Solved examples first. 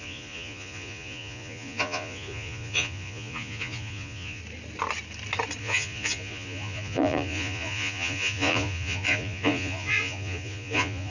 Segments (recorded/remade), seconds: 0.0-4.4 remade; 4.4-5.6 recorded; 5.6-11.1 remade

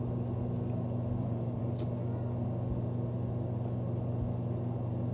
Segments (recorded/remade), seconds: 0.0-1.2 recorded; 1.2-1.7 remade; 1.7-5.1 recorded

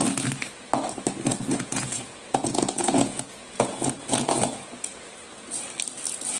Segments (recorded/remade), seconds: 0.0-1.3 recorded; 1.3-5.1 remade; 5.1-6.4 recorded

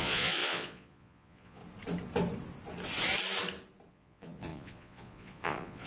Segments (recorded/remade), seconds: 0.0-1.6 remade; 1.6-3.9 recorded; 3.9-5.9 remade

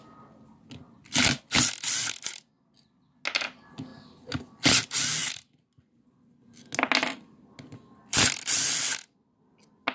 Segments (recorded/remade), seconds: 0.0-9.9 recorded

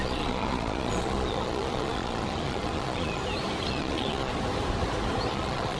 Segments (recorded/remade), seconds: 0.0-3.2 remade; 3.2-3.7 recorded; 3.7-4.3 remade; 4.3-5.3 recorded; 5.3-5.8 remade

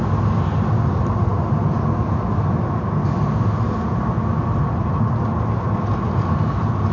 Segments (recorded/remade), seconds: 0.0-6.9 recorded

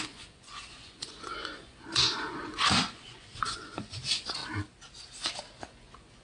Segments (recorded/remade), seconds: 0.0-4.4 remade; 4.4-5.6 recorded; 5.6-6.2 remade